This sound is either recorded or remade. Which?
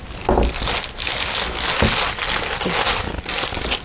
recorded